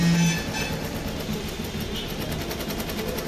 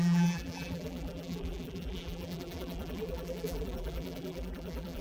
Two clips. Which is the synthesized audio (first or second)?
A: second